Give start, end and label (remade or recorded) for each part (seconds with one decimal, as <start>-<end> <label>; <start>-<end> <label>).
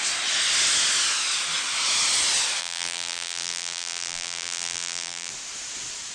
0.0-2.6 recorded; 2.6-5.3 remade; 5.3-6.1 recorded